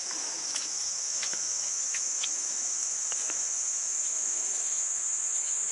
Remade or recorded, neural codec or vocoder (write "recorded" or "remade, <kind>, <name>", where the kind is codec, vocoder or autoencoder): remade, autoencoder, DAC-VAE